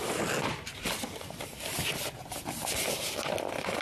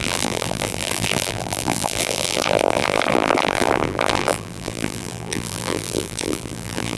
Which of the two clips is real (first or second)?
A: first